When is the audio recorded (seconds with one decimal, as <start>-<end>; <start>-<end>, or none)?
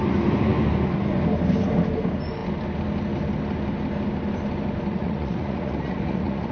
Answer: 0.0-4.9